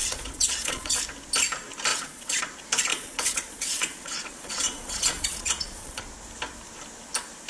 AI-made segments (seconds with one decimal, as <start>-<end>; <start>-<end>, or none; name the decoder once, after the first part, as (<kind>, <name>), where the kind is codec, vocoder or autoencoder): 0.0-1.0 (vocoder, Vocos); 1.9-2.4; 2.9-6.0